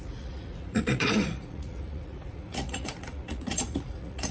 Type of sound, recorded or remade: remade